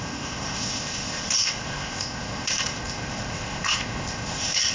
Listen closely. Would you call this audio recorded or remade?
remade